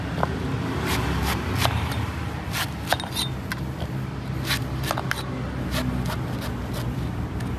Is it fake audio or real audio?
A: real